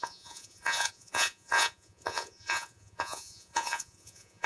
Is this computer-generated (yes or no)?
yes